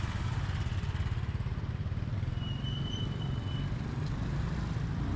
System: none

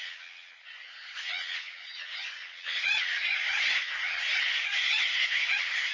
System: vocoder, Vocos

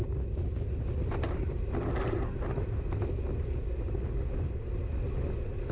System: none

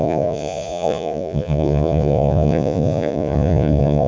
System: vocoder, Vocos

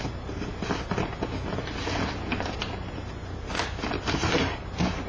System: none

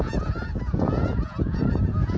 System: vocoder, Vocos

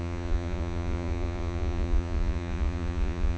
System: vocoder, Vocos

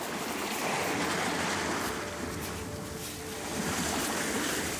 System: none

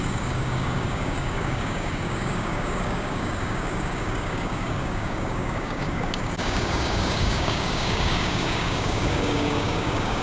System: codec, DAC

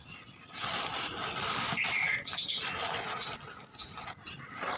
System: none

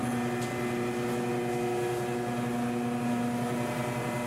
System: none